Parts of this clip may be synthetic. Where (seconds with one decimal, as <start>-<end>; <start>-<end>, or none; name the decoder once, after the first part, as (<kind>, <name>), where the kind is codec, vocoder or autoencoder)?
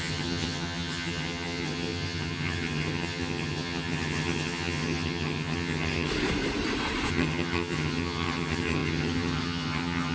0.0-6.1 (vocoder, HiFi-GAN); 7.1-10.1